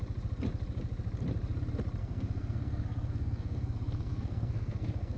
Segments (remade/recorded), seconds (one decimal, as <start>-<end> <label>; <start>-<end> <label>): 0.0-2.0 recorded; 2.0-5.2 remade